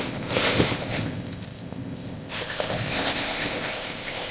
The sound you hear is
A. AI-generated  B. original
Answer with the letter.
A